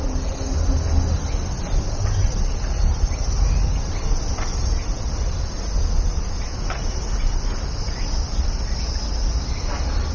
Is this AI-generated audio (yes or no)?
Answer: no